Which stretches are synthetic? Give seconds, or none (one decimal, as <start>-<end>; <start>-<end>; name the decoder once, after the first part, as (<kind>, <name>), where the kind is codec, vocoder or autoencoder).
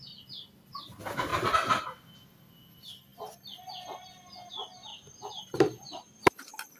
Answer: 1.3-2.4 (vocoder, BigVGAN v2); 3.1-3.7; 4.9-6.8